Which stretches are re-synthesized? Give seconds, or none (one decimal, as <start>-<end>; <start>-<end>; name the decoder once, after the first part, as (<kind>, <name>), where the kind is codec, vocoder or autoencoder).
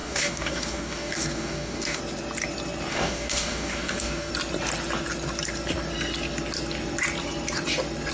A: 0.0-2.0 (codec, DAC); 2.9-4.3